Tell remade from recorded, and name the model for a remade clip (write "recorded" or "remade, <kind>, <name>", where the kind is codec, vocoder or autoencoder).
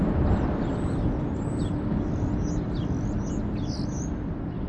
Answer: recorded